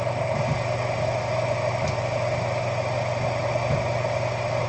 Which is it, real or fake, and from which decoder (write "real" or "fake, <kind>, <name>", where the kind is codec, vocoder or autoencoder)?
real